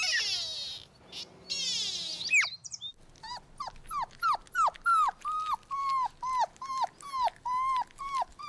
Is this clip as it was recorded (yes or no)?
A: yes